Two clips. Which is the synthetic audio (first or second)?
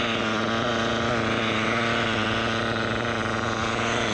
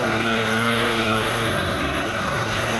second